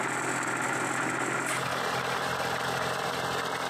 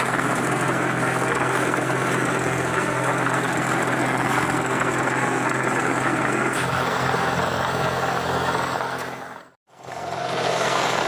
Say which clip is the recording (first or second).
first